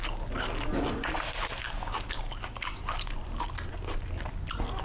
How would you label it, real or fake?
real